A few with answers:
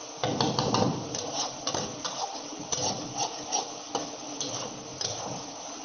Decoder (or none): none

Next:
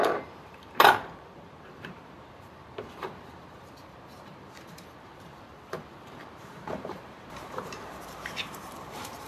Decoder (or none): vocoder, BigVGAN v2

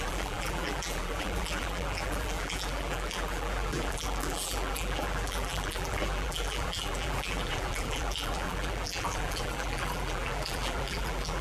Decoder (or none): vocoder, BigVGAN v2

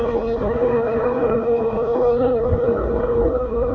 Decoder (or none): codec, SNAC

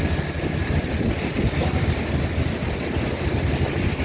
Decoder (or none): none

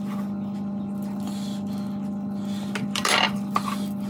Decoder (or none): none